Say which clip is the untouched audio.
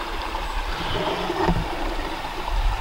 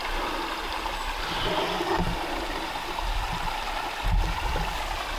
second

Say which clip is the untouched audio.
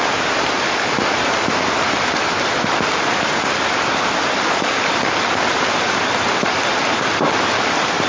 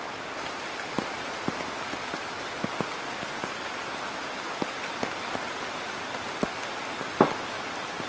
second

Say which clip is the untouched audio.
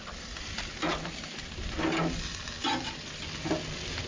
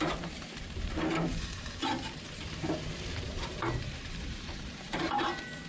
first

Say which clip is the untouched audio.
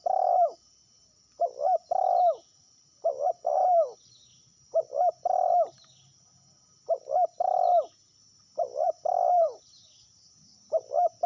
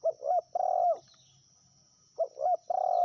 second